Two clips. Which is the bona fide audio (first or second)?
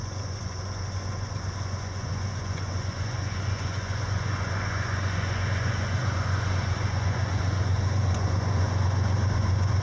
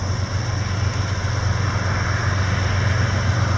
second